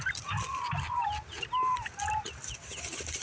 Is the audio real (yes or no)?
yes